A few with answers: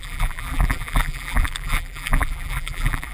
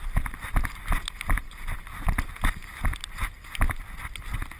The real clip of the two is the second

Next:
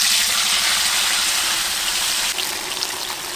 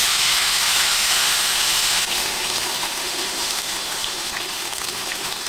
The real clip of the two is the first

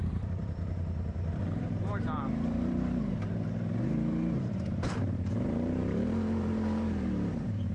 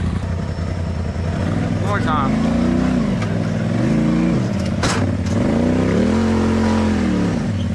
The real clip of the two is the second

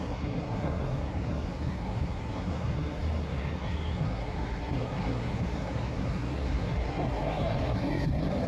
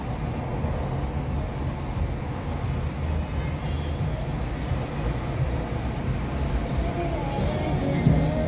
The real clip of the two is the second